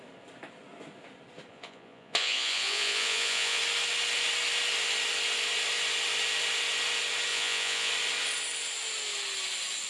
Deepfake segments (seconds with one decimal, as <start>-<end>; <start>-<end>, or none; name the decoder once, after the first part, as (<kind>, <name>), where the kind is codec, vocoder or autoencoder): 1.5-3.6 (vocoder, Vocos); 7.3-7.9